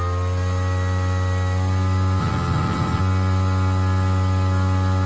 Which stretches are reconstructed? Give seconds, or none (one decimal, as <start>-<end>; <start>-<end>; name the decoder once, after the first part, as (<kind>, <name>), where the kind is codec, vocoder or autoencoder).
2.2-3.0 (vocoder, HiFi-GAN)